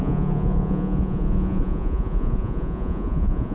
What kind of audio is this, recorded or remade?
remade